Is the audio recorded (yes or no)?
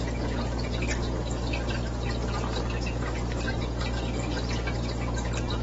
yes